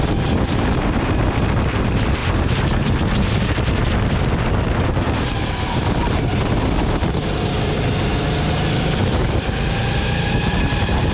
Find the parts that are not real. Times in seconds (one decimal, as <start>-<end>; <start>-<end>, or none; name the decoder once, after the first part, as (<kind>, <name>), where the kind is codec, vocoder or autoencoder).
2.2-2.9 (vocoder, BigVGAN v2)